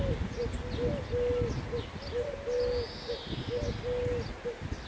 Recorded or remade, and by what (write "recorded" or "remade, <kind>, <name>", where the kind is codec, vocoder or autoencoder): recorded